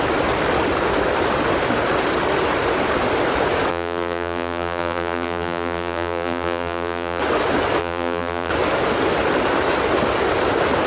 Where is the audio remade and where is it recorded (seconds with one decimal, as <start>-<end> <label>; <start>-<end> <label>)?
0.0-3.7 recorded; 3.7-7.2 remade; 7.2-7.8 recorded; 7.8-8.5 remade; 8.5-10.9 recorded